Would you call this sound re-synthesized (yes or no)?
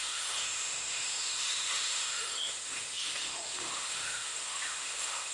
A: yes